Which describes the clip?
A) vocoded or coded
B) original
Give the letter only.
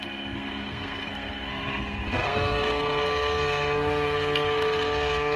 A